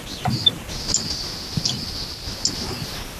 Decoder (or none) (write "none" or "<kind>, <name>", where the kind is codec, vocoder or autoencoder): none